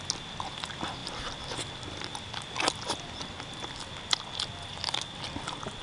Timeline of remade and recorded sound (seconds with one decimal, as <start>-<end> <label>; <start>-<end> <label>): 0.0-5.8 recorded

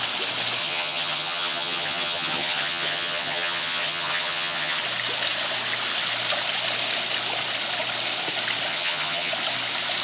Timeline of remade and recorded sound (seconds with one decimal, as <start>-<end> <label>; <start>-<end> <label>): 0.0-0.6 recorded; 0.6-4.8 remade; 4.8-8.7 recorded; 8.7-9.3 remade; 9.3-10.0 recorded

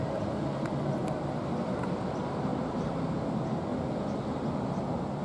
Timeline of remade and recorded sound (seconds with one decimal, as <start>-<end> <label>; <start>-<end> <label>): 0.0-5.2 recorded